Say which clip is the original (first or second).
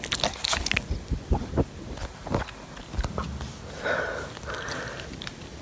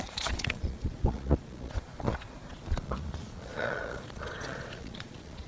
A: first